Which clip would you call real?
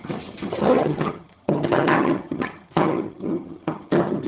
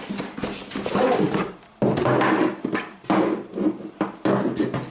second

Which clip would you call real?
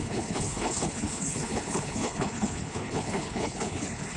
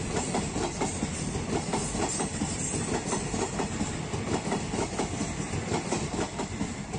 second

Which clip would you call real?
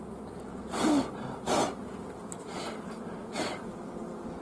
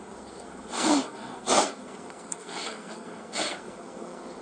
first